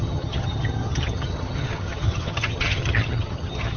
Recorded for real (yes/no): no